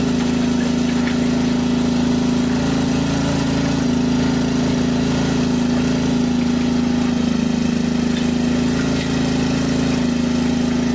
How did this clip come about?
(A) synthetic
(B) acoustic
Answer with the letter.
B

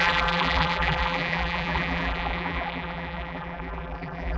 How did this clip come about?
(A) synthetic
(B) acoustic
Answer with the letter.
A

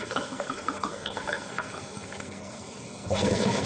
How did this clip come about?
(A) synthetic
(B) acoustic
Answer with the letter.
A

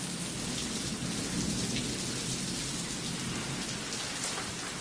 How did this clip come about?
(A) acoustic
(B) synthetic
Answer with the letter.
A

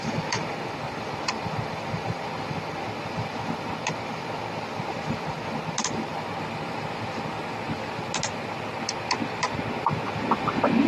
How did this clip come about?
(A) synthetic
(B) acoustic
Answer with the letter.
B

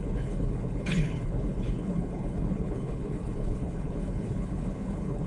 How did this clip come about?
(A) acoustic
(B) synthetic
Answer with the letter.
B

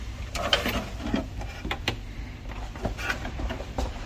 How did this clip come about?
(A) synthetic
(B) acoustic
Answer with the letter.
B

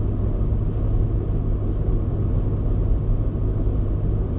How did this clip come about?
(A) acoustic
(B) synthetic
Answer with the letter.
A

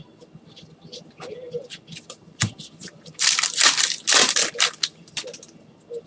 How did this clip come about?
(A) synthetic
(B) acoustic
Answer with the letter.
A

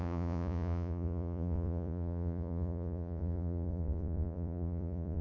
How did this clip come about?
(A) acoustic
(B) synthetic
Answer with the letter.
B